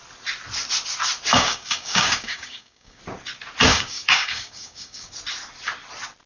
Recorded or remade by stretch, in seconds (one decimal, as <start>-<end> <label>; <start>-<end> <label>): 0.0-1.3 recorded; 1.3-3.0 remade; 3.0-3.7 recorded; 3.7-5.1 remade; 5.1-6.3 recorded